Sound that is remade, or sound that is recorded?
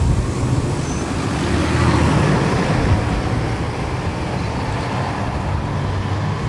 recorded